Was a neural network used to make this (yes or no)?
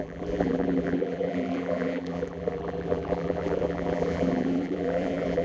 yes